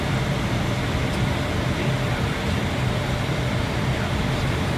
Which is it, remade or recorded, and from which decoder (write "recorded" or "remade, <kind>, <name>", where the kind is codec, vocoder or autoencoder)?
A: remade, vocoder, BigVGAN v2